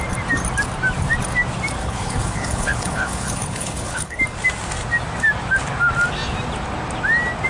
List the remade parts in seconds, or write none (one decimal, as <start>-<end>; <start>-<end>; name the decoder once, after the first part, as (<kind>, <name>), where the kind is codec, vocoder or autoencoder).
1.8-4.2 (codec, HILCodec)